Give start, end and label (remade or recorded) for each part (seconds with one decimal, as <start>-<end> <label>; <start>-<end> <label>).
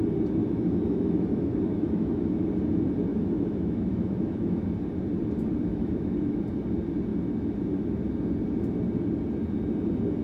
0.0-0.4 recorded; 0.4-2.5 remade; 2.5-3.1 recorded; 3.1-4.6 remade; 4.6-5.7 recorded; 5.7-6.4 remade; 6.4-10.2 recorded